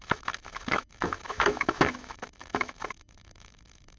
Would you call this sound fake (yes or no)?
yes